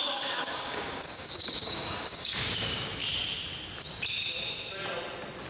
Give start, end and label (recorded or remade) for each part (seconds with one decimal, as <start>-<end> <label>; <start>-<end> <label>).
0.0-3.0 remade; 3.0-5.5 recorded